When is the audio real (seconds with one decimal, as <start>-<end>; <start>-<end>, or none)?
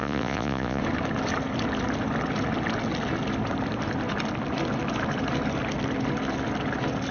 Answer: 0.8-7.1